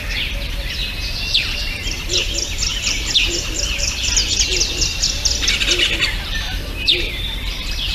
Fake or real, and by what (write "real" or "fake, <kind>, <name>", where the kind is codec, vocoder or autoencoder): fake, vocoder, BigVGAN v2